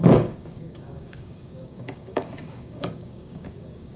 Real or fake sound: fake